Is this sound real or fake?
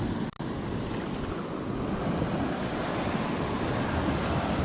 real